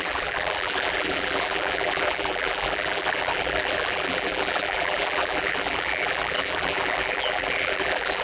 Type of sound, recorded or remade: remade